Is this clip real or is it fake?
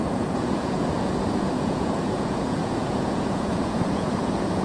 fake